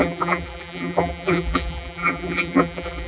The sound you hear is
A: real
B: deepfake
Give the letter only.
B